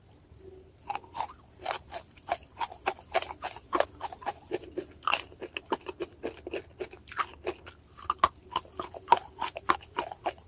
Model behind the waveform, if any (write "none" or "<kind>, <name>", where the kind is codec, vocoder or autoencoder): none